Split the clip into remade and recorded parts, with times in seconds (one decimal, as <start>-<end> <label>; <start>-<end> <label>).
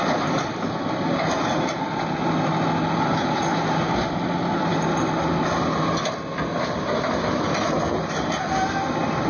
0.0-9.3 recorded